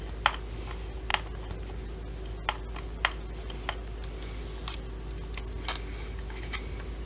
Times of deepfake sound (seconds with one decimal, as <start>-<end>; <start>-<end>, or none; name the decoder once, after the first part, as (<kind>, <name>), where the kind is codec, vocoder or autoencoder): none